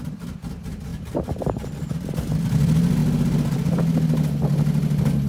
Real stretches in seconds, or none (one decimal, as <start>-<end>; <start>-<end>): 0.0-0.9; 1.9-5.3